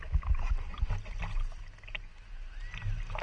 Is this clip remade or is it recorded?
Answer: recorded